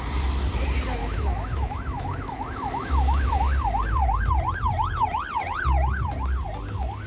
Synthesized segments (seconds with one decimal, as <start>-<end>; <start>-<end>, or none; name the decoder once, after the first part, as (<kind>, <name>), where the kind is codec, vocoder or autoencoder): 1.0-3.4 (autoencoder, DAC-VAE)